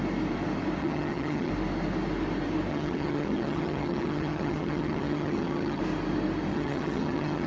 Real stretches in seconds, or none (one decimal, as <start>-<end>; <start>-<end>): 0.0-0.8; 1.5-2.7; 5.8-6.5